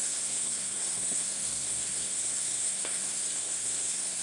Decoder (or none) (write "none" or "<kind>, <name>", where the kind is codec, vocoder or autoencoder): codec, SNAC